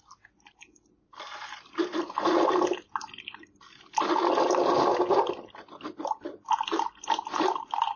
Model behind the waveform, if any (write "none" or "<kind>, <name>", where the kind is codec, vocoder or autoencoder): none